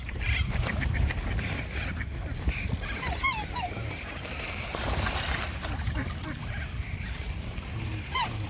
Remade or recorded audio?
remade